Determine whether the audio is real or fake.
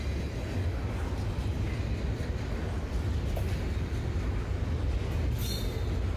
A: real